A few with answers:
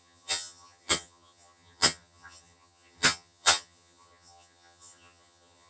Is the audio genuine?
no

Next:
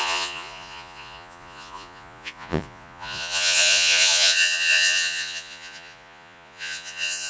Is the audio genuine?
no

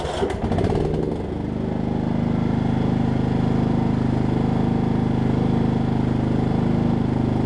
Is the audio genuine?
yes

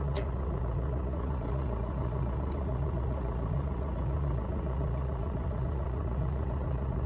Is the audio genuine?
no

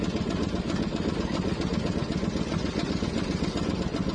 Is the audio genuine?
yes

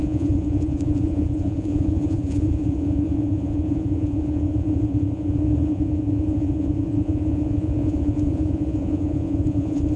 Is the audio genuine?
no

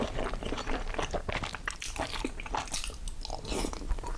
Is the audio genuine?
yes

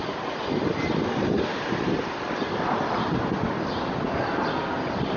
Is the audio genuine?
yes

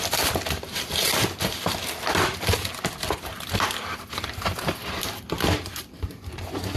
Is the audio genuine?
no